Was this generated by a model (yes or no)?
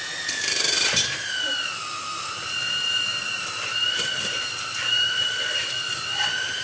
yes